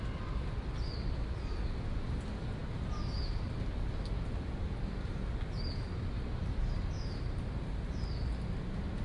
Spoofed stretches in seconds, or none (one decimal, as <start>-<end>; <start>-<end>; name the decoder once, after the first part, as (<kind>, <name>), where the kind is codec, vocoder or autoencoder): none